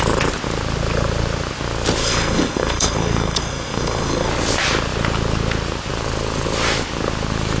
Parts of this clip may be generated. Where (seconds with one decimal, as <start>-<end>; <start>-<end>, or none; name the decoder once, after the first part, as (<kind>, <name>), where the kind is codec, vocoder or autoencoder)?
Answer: 2.0-4.3 (codec, SNAC)